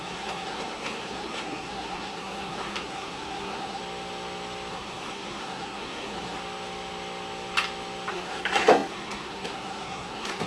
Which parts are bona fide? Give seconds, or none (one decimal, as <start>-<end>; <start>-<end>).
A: 3.8-4.7; 6.4-8.1